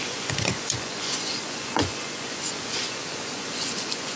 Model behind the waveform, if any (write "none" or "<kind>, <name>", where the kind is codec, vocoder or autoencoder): vocoder, Vocos